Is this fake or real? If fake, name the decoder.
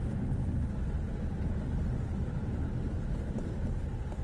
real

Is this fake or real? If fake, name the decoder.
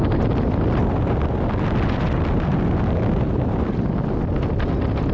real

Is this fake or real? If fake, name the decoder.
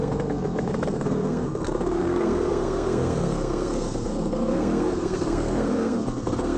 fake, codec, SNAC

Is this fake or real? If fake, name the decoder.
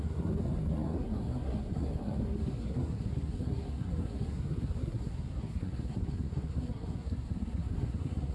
fake, codec, SNAC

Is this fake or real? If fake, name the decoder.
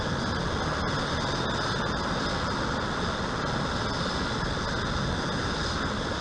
real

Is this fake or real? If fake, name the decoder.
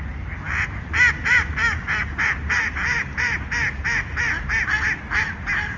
real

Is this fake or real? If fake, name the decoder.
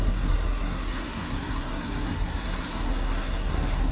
fake, codec, SNAC